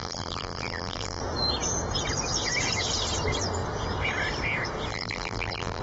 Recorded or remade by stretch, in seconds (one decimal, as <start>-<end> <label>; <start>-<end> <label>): 0.0-1.2 remade; 1.2-4.9 recorded; 4.9-5.8 remade